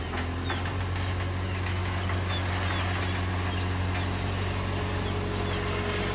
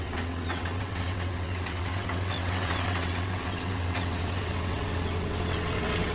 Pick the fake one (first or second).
second